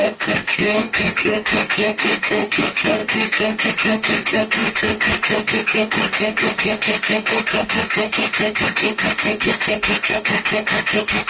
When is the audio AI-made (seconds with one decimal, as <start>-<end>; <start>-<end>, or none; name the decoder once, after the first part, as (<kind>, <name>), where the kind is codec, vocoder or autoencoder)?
0.0-11.3 (codec, DAC)